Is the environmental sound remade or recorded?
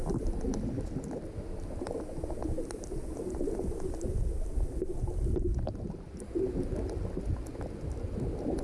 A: recorded